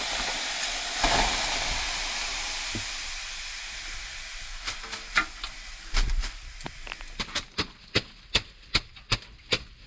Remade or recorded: recorded